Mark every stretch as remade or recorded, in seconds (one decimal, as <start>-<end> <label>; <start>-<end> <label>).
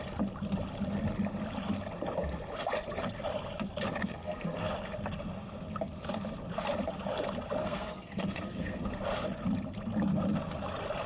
0.0-4.0 recorded; 4.0-4.7 remade; 4.7-7.6 recorded; 7.6-8.9 remade; 8.9-11.1 recorded